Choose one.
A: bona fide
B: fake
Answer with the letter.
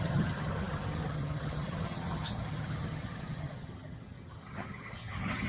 B